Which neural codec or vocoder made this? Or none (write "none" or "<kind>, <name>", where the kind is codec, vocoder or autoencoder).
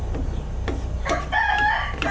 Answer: none